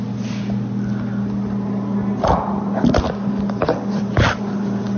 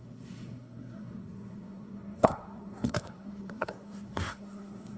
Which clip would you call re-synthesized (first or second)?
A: second